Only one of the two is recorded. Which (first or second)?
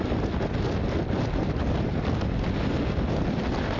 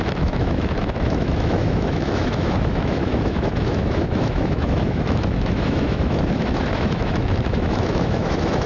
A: first